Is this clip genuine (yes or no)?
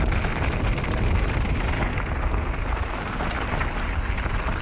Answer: yes